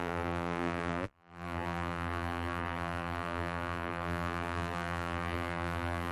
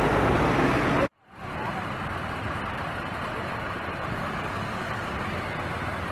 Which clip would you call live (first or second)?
second